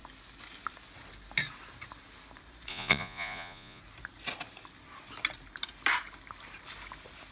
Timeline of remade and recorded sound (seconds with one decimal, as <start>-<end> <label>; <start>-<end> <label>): 0.0-2.7 recorded; 2.7-3.8 remade; 3.8-7.3 recorded